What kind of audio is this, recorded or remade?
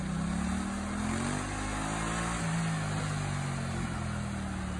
recorded